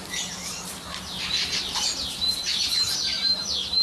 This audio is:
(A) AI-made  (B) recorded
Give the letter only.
A